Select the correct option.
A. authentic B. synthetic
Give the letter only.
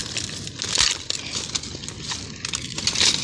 A